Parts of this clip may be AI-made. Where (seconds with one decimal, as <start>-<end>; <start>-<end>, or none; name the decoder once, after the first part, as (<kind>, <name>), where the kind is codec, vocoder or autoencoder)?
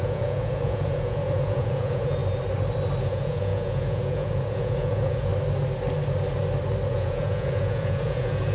0.0-2.2 (vocoder, Vocos); 3.0-5.3; 6.9-8.5